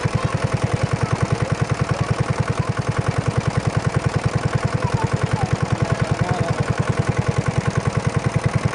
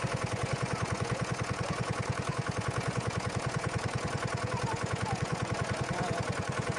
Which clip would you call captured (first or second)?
first